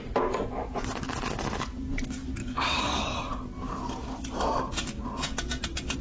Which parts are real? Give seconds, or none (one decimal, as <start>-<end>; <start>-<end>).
0.0-2.4; 3.0-6.0